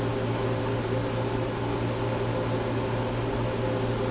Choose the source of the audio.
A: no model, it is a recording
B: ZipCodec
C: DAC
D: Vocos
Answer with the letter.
A